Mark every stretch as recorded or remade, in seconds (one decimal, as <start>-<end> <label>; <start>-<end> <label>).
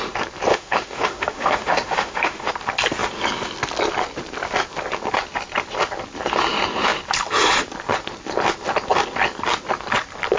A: 0.0-0.5 recorded; 0.5-2.5 remade; 2.5-10.4 recorded